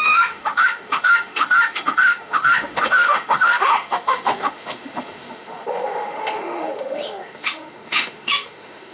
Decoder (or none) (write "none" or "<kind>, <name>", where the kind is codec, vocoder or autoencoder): autoencoder, DAC-VAE